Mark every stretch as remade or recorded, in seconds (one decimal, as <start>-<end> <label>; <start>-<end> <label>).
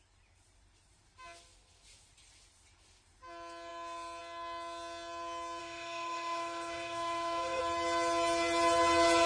0.0-5.6 recorded; 5.6-7.6 remade; 7.6-9.3 recorded